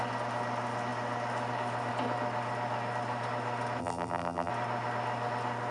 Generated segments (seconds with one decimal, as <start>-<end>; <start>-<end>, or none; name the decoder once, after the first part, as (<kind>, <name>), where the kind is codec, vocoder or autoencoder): 3.8-4.5 (vocoder, BigVGAN v2)